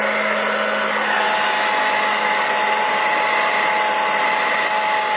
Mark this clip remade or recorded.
recorded